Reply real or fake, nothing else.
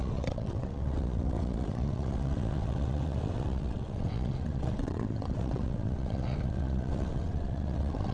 fake